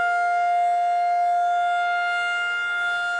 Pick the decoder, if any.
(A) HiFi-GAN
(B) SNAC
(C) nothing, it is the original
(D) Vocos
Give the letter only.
C